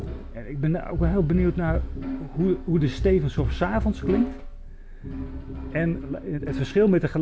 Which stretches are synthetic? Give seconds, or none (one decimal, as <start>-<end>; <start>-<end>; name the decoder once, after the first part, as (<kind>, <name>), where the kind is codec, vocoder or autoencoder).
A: none